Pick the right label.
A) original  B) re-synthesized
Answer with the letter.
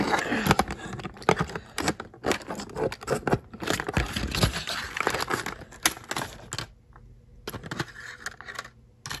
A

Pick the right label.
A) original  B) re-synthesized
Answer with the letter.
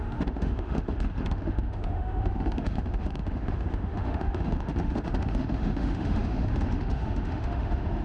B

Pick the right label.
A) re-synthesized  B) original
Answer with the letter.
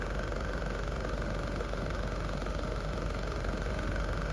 A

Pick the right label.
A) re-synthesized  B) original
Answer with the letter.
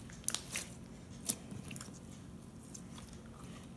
B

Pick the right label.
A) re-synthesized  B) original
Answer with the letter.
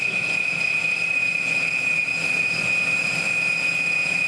B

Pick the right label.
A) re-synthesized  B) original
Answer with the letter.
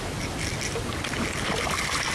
B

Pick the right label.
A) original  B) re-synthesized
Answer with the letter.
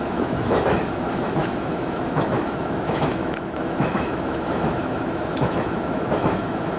B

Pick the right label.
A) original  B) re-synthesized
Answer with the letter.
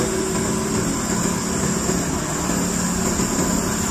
A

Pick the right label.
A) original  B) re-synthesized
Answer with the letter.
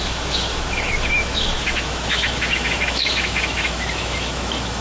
B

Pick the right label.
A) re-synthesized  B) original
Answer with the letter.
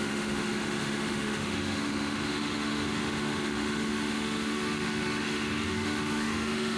A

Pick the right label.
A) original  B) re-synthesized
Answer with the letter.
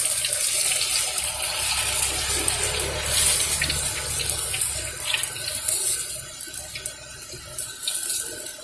A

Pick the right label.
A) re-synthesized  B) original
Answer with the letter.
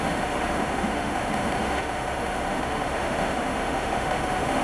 A